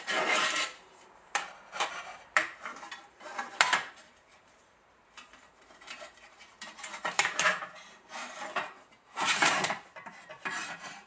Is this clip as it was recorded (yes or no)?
no